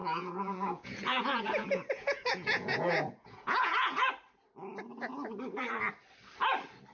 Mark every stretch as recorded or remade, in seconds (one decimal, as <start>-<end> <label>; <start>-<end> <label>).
0.0-4.1 remade; 4.1-6.9 recorded